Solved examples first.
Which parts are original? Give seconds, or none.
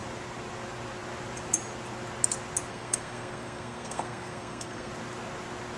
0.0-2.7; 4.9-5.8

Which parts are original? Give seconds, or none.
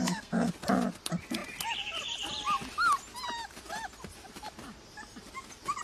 0.5-5.8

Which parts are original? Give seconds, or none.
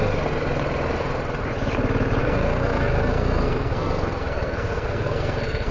0.0-2.2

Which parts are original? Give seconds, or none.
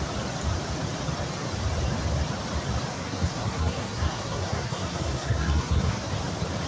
0.0-2.9; 6.1-6.7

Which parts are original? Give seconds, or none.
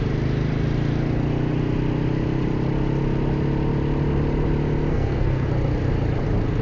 0.0-4.9; 5.5-6.6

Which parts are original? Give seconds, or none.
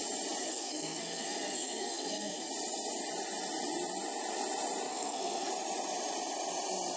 0.0-0.4; 2.5-4.9; 5.5-7.0